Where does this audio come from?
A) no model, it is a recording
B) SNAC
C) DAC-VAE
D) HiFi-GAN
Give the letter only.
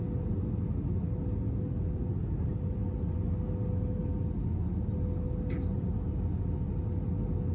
A